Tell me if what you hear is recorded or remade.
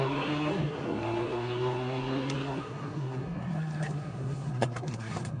remade